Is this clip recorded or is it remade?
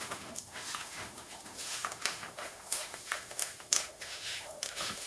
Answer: remade